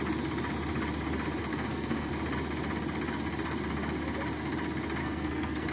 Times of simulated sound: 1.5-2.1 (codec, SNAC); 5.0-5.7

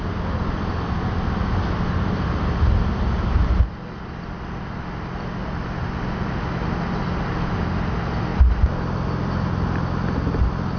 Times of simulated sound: none

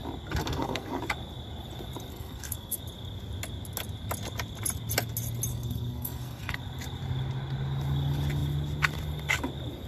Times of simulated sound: 0.4-1.0 (codec, SNAC); 2.1-2.8; 5.5-6.6